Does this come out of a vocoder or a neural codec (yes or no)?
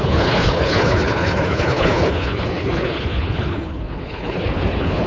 yes